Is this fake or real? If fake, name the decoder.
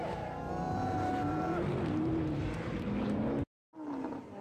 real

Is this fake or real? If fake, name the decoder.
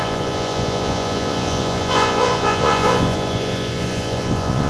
fake, vocoder, Vocos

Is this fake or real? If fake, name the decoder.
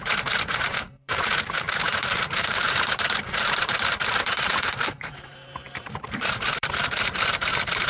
fake, vocoder, BigVGAN v2